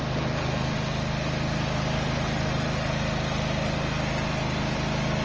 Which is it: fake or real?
real